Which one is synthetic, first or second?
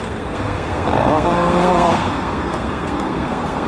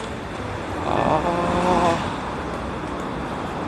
first